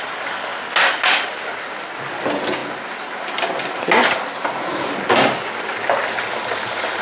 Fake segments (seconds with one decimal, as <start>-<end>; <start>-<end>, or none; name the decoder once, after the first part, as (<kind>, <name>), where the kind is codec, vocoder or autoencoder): none